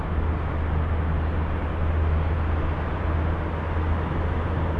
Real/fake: real